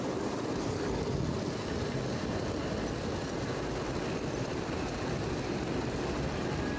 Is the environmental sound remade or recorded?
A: recorded